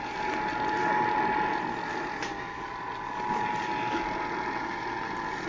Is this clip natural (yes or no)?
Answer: yes